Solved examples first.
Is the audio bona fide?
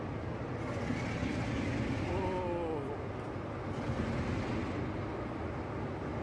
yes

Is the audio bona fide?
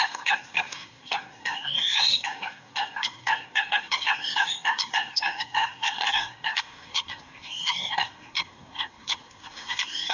no